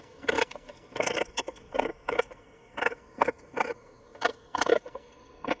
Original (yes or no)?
no